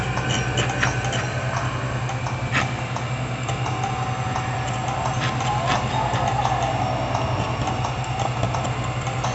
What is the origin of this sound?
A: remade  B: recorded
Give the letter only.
B